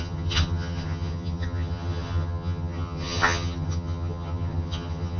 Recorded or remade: remade